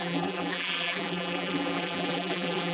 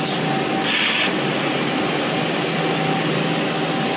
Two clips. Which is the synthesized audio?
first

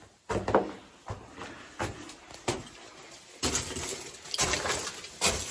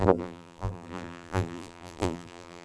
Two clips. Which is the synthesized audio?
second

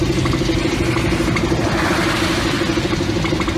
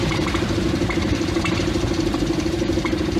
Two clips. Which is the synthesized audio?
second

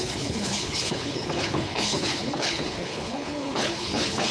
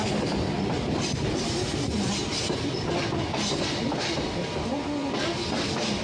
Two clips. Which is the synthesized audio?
first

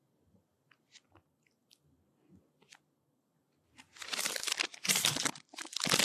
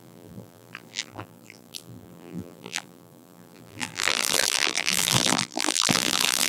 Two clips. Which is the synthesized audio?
second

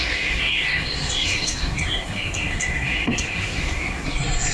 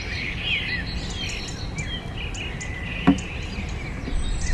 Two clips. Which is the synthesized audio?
first